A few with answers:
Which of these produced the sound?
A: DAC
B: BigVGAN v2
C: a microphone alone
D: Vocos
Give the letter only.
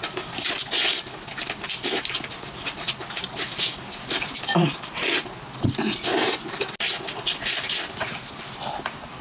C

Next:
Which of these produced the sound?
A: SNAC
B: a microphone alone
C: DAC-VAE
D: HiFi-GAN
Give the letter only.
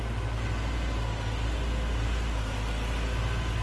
B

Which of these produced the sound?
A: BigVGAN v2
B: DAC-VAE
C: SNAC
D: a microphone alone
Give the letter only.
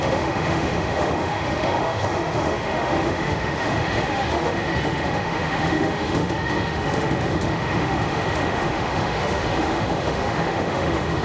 B